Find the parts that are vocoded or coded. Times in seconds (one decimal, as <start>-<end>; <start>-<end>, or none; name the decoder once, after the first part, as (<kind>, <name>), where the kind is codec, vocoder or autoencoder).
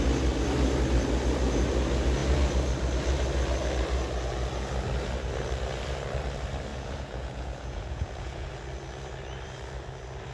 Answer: 6.7-8.5 (vocoder, Vocos)